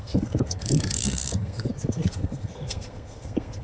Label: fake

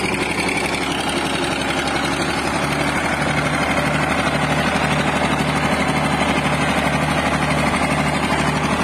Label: real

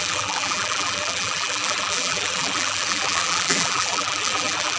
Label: fake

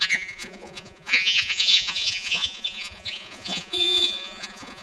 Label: fake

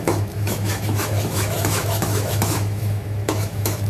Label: fake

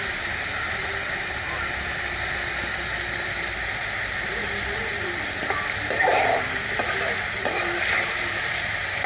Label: real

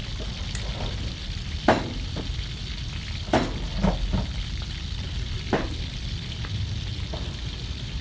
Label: real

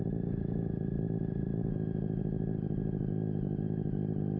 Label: real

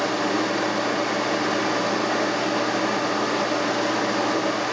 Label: real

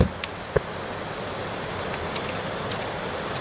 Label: real